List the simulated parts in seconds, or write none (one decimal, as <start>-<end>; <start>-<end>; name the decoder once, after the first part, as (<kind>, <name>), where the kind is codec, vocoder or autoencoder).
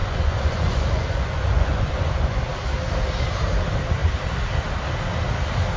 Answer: 0.0-2.4 (vocoder, Vocos)